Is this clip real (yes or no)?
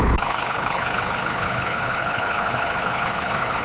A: no